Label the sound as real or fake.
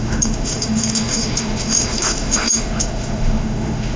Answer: fake